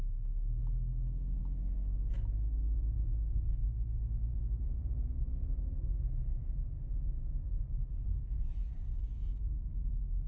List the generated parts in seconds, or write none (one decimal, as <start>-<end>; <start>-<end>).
8.6-9.2